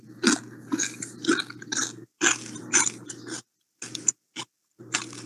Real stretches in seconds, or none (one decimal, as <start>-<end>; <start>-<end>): 0.0-5.3